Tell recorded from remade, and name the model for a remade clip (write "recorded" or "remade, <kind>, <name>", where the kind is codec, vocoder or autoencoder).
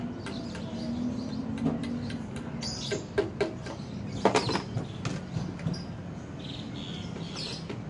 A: recorded